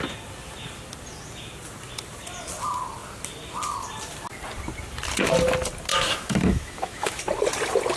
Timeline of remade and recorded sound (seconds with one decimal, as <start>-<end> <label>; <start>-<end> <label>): 0.0-5.9 recorded; 5.9-7.2 remade; 7.2-8.0 recorded